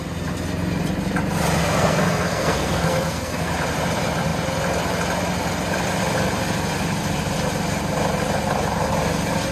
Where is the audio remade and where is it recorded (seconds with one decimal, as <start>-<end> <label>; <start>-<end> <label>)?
0.0-1.6 recorded; 1.6-3.5 remade; 3.5-9.5 recorded